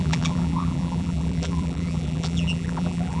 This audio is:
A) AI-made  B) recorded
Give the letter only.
A